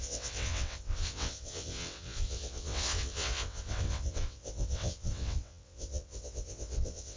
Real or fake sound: fake